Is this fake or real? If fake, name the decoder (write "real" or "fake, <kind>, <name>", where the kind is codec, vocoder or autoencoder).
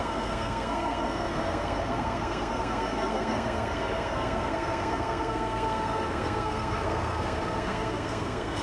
fake, codec, SNAC